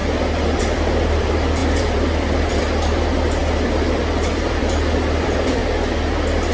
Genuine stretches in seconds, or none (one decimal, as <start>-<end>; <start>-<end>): 0.0-0.6; 3.4-4.0; 5.6-6.5